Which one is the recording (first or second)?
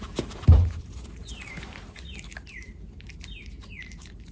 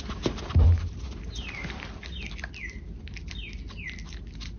second